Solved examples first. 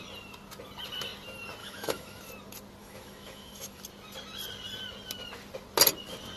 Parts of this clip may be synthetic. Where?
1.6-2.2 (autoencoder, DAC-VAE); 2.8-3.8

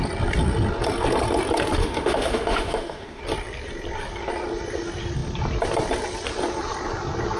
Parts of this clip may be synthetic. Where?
1.8-3.2 (autoencoder, DAC-VAE)

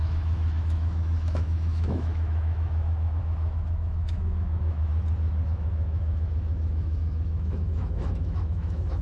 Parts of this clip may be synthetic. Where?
0.0-4.9 (autoencoder, DAC-VAE); 5.5-9.0

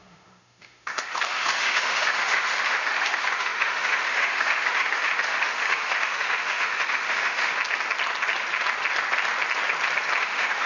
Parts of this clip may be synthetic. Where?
0.0-7.5 (autoencoder, DAC-VAE); 10.2-10.7

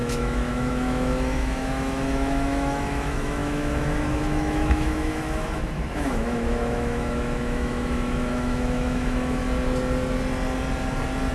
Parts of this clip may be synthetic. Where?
0.0-9.4 (autoencoder, DAC-VAE)